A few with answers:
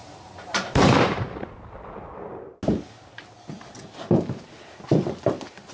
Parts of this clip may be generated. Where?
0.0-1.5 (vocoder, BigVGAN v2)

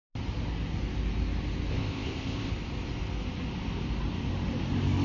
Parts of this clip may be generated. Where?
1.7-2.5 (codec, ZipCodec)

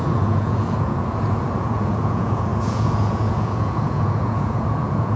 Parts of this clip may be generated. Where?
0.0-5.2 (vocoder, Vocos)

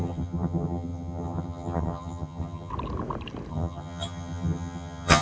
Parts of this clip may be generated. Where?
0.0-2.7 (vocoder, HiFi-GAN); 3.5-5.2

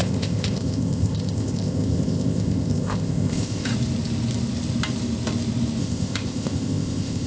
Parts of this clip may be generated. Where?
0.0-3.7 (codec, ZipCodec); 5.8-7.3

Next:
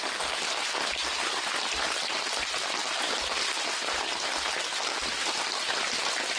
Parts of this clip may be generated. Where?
none

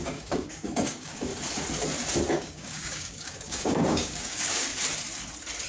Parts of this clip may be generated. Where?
0.0-1.3 (codec, DAC); 2.3-4.7